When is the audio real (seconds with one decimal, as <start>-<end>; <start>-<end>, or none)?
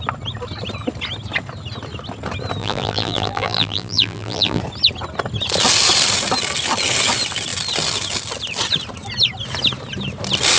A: 0.0-2.6; 4.6-10.6